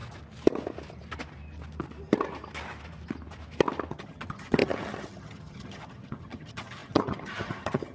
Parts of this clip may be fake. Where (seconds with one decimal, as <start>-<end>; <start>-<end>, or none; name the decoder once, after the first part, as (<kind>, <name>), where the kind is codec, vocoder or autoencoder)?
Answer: 3.9-7.9 (vocoder, HiFi-GAN)